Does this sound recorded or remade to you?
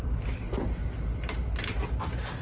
recorded